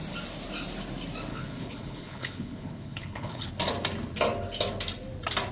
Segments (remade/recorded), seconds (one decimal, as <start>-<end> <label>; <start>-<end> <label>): 0.0-1.3 recorded; 1.3-3.5 remade; 3.5-5.5 recorded